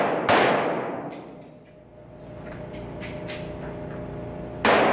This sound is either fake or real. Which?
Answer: real